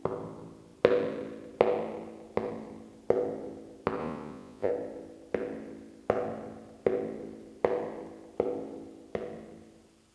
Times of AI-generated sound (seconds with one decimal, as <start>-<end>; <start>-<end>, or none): 4.0-4.7

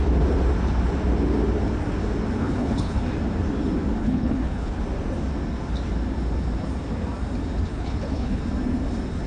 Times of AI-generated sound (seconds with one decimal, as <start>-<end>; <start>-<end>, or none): 2.4-3.0; 4.0-4.8; 7.7-8.4

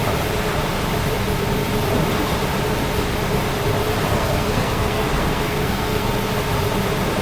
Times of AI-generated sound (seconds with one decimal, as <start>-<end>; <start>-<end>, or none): 4.1-6.1